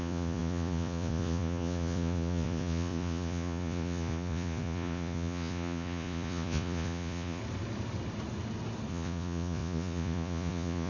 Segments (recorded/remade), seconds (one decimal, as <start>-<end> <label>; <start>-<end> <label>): 0.0-7.4 remade; 7.4-8.9 recorded; 8.9-10.9 remade